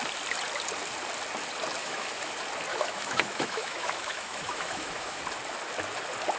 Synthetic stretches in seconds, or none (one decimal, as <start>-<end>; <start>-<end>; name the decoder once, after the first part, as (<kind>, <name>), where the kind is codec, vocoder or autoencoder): 1.8-2.3 (autoencoder, DAC-VAE); 2.7-5.2